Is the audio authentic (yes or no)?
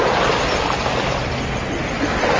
yes